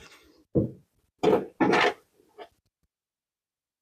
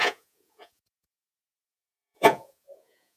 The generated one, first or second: second